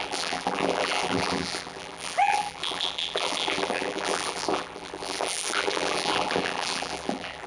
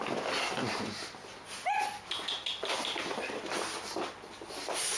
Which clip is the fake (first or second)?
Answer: first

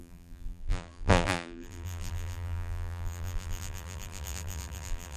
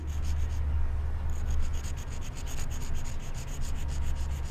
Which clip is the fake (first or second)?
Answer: first